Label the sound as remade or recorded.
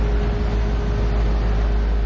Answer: recorded